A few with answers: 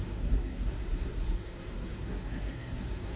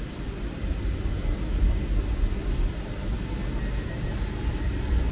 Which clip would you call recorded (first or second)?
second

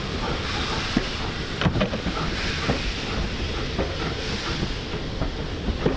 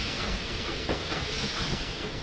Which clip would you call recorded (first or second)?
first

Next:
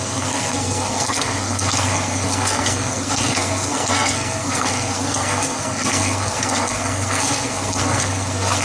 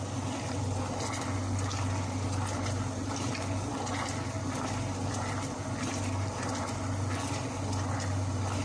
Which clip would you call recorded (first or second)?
second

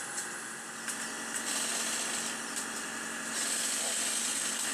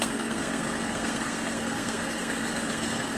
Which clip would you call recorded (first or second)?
first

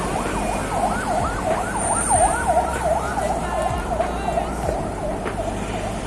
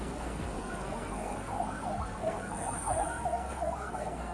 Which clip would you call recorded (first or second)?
first